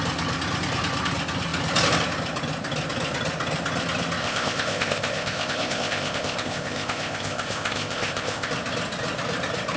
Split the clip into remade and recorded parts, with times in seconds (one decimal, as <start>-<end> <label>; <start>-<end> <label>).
0.0-4.2 recorded; 4.2-8.5 remade; 8.5-9.8 recorded